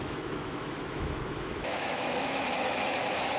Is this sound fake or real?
fake